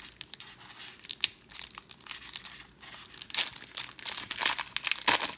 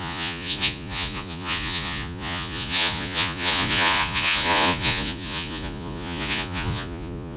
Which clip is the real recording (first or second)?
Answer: first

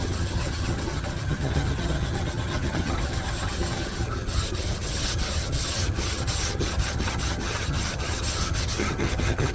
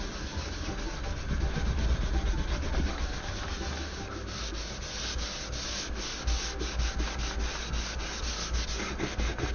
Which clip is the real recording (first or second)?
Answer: second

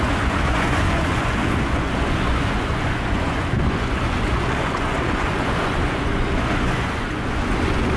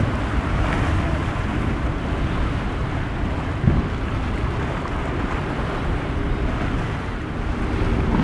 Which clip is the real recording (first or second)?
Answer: second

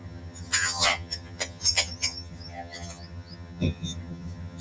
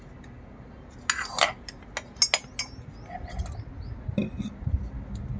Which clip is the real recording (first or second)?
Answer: second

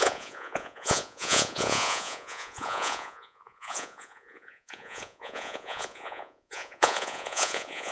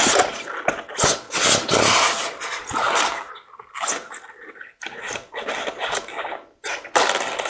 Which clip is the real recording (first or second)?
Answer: second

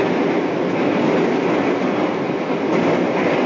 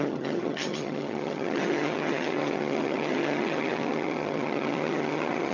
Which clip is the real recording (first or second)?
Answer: first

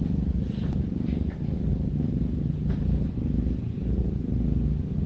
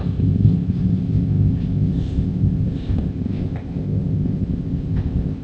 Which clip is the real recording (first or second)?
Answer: first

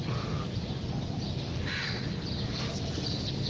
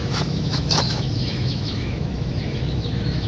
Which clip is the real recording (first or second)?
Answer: first